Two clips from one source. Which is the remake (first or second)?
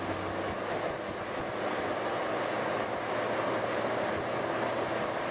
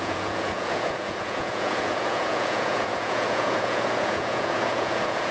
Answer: second